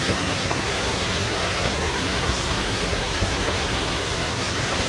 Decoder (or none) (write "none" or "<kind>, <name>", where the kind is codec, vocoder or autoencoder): codec, SNAC